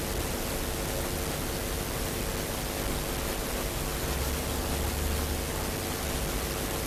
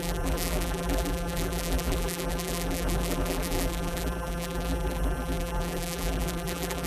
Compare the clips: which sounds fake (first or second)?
second